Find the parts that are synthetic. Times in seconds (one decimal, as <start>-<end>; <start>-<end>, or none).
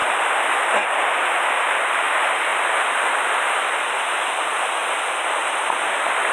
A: 0.0-1.5; 2.5-3.9; 4.8-5.4